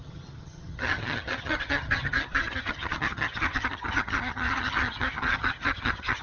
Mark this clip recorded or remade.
remade